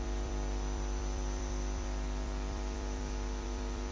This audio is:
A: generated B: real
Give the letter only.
A